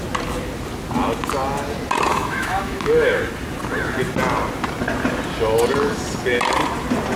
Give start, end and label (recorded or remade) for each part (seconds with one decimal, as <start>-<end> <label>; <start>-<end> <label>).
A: 0.0-2.1 recorded; 2.1-3.2 remade; 3.2-7.2 recorded